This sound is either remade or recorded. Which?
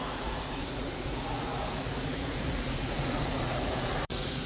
remade